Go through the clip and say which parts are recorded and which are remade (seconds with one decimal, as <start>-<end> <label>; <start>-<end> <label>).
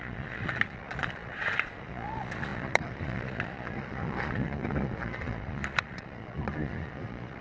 0.0-7.4 remade